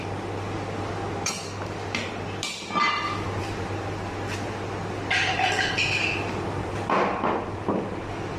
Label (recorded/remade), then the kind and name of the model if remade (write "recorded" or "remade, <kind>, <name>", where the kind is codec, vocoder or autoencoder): recorded